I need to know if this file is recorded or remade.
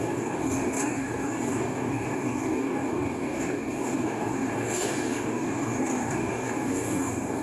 remade